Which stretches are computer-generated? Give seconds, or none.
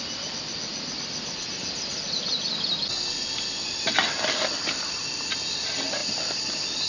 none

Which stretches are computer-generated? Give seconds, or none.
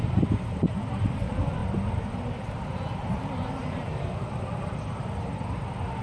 0.0-1.6 (vocoder, BigVGAN v2); 2.3-6.0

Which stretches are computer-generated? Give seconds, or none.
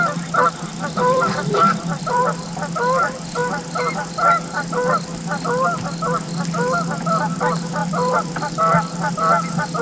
0.7-2.2 (vocoder, BigVGAN v2); 7.8-8.6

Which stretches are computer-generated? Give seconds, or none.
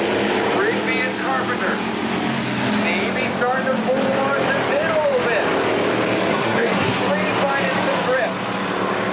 6.3-7.0 (codec, SNAC)